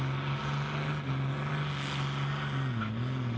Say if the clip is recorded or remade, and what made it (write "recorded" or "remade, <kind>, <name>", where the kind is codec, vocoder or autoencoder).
recorded